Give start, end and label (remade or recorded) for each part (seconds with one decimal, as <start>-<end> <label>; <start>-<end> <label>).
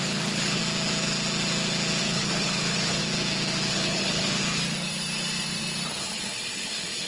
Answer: 0.0-0.6 remade; 0.6-2.0 recorded; 2.0-3.0 remade; 3.0-3.7 recorded; 3.7-4.4 remade; 4.4-6.0 recorded; 6.0-7.1 remade